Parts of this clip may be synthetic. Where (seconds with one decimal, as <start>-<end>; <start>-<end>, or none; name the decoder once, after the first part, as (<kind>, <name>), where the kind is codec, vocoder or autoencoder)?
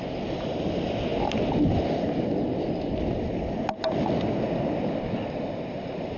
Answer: none